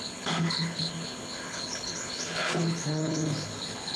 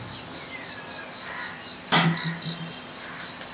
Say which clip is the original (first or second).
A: second